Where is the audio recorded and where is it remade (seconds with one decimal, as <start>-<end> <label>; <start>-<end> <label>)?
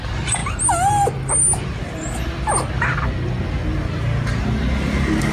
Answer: 0.0-5.3 recorded